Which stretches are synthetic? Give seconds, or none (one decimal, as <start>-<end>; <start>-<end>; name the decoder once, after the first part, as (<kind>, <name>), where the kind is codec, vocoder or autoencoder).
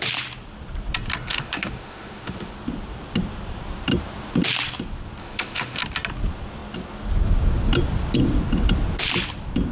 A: 1.3-2.5 (autoencoder, DAC-VAE); 5.2-5.8